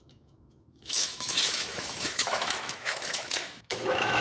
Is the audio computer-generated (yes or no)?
yes